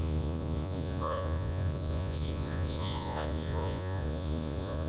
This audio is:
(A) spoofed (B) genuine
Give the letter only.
A